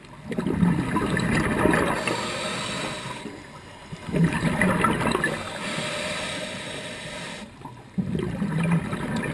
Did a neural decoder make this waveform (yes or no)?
no